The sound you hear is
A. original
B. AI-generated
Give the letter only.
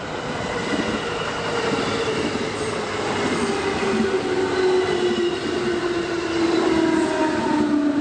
A